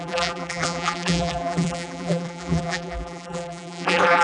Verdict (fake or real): fake